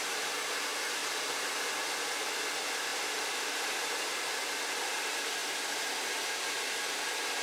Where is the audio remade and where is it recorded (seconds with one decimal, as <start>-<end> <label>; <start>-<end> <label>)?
0.0-7.4 recorded